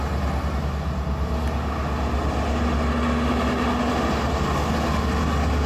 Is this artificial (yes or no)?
no